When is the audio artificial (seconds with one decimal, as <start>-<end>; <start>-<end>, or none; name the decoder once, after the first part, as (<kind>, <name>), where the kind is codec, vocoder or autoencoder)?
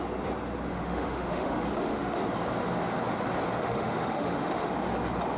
0.7-2.2 (autoencoder, DAC-VAE); 3.6-4.7